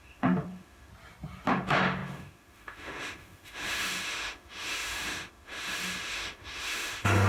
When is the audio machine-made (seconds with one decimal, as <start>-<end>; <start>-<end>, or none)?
0.0-0.9; 1.5-7.3